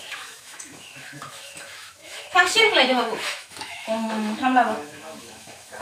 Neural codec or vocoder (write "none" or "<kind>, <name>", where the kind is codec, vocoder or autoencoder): autoencoder, DAC-VAE